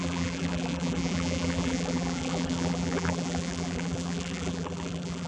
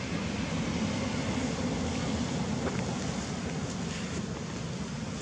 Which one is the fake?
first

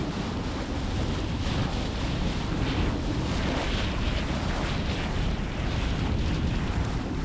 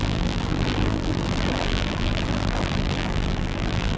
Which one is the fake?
second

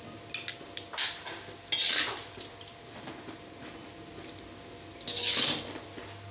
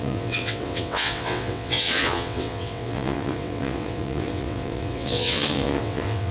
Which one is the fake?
second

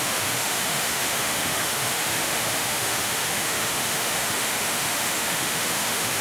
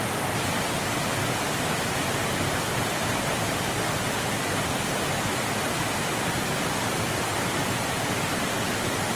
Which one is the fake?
first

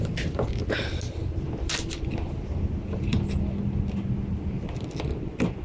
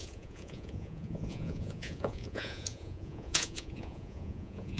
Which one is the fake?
second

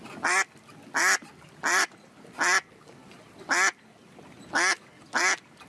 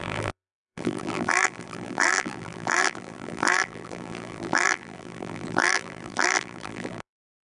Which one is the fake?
second